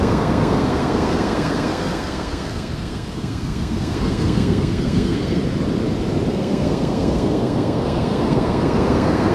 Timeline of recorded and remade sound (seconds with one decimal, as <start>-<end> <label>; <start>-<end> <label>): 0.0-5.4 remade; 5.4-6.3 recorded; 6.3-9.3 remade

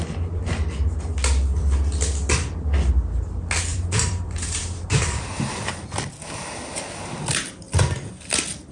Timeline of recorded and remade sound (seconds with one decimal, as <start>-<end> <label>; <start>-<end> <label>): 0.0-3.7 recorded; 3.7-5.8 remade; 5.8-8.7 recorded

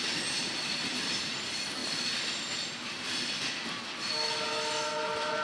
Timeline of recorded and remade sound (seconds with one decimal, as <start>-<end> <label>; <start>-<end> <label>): 0.0-1.8 remade; 1.8-4.8 recorded; 4.8-5.4 remade

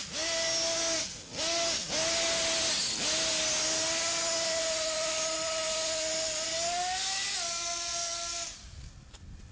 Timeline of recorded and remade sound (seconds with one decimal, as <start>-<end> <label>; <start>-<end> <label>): 0.0-9.5 recorded

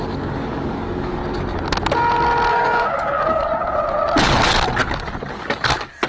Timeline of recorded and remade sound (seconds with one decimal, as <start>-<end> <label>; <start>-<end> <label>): 0.0-1.2 remade; 1.2-2.5 recorded; 2.5-3.5 remade; 3.5-5.3 recorded; 5.3-6.1 remade

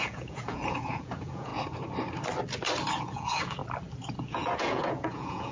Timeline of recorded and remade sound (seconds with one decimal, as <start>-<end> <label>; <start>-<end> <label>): 0.0-1.5 remade; 1.5-3.0 recorded; 3.0-3.6 remade; 3.6-4.2 recorded; 4.2-5.5 remade

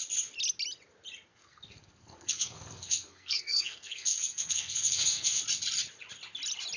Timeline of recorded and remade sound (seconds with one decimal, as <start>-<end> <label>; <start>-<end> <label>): 0.0-1.3 recorded; 1.3-5.4 remade; 5.4-6.8 recorded

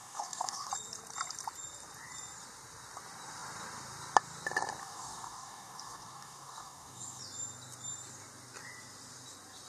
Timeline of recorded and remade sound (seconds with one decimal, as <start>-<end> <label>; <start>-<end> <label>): 0.0-0.7 remade; 0.7-4.8 recorded; 4.8-7.2 remade; 7.2-9.7 recorded